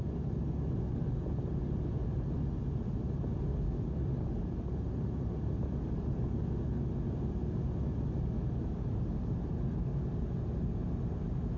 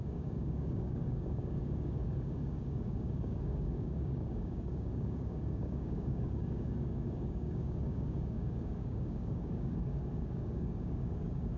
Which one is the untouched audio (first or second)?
first